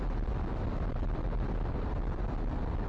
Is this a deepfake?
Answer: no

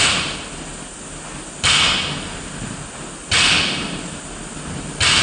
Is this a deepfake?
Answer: no